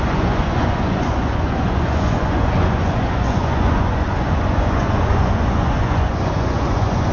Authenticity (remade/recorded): remade